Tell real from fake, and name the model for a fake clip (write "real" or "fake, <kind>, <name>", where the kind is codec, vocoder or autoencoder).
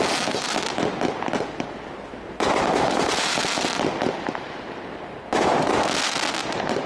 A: real